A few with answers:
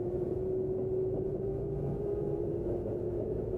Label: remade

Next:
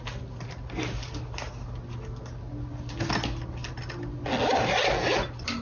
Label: recorded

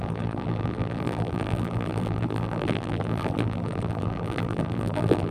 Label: remade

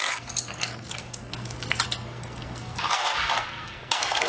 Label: remade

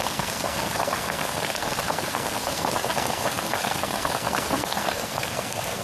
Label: remade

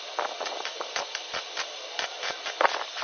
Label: remade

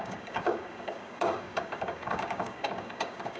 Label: remade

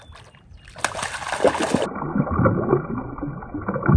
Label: recorded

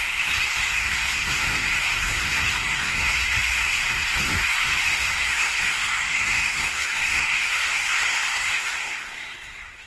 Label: remade